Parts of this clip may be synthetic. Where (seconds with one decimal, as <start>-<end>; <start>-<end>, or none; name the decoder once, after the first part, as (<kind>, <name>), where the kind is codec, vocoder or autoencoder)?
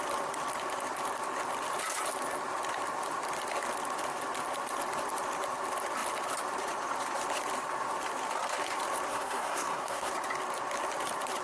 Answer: 9.1-10.1 (codec, SNAC)